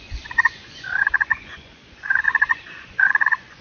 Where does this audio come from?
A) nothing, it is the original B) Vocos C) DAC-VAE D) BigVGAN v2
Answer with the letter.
B